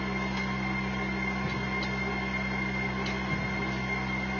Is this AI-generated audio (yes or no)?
no